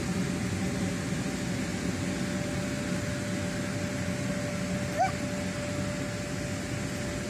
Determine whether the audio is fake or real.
real